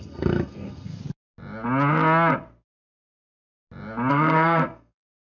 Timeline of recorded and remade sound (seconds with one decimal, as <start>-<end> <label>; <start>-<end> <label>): 0.0-1.0 remade; 1.0-4.1 recorded; 4.1-5.4 remade